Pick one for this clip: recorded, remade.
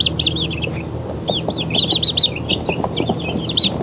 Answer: recorded